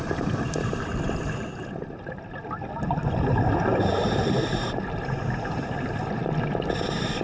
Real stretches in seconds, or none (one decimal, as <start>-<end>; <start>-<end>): 0.9-3.1; 6.2-6.7